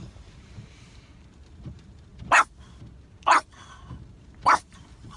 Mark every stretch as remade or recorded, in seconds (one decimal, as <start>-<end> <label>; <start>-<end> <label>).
0.0-2.1 remade; 2.1-4.2 recorded; 4.2-5.2 remade